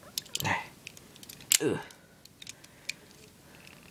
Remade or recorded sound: recorded